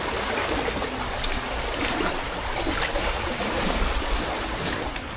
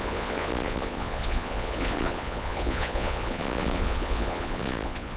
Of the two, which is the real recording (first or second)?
first